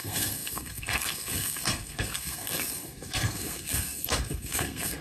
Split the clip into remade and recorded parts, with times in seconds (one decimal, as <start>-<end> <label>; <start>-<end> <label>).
0.0-5.0 remade